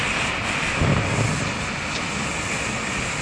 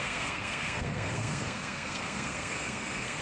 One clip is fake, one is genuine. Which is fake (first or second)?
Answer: second